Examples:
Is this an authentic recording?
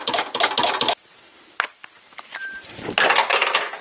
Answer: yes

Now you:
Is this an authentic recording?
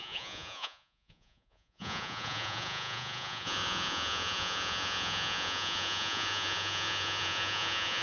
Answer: no